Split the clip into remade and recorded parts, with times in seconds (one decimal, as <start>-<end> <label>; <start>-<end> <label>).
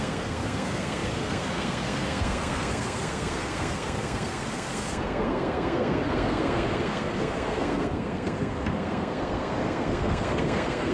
0.0-10.9 remade